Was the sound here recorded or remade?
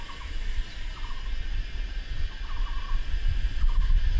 recorded